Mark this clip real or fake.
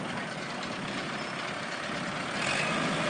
real